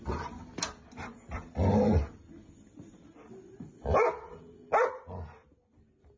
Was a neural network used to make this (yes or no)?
no